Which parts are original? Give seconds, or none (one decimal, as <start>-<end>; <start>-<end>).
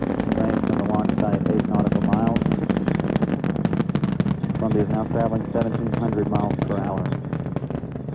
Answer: 0.0-8.1